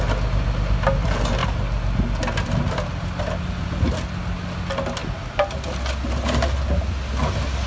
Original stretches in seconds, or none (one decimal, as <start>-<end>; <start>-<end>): 0.0-7.7